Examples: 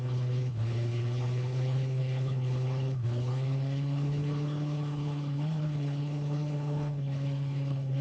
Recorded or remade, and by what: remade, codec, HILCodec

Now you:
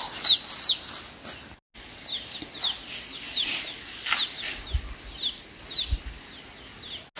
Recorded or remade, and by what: recorded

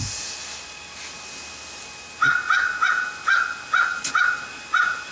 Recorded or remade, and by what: recorded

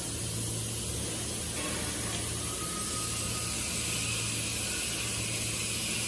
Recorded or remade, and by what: recorded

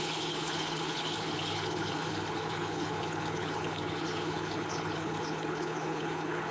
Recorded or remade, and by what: remade, codec, HILCodec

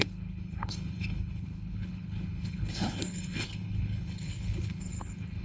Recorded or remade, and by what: remade, codec, HILCodec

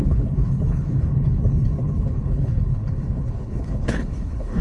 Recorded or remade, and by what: remade, codec, HILCodec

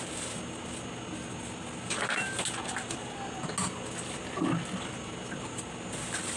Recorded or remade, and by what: recorded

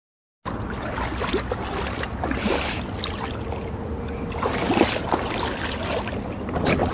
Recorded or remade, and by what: recorded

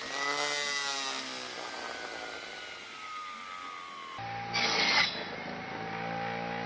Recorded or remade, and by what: recorded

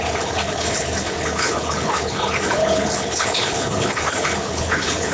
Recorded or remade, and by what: remade, codec, HILCodec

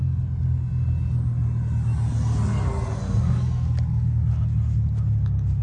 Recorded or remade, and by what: recorded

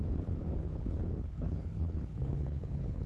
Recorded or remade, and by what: remade, codec, HILCodec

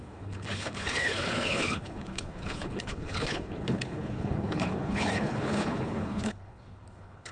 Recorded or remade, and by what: remade, codec, HILCodec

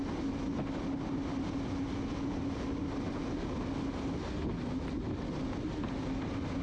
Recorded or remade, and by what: recorded